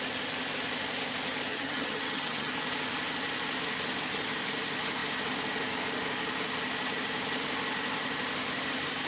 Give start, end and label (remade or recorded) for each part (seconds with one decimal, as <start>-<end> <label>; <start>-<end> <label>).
0.0-1.5 recorded; 1.5-2.5 remade; 2.5-9.1 recorded